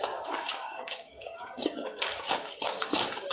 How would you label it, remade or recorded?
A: remade